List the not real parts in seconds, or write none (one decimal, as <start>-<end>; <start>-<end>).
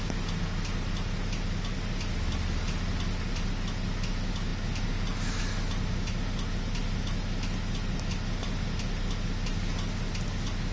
none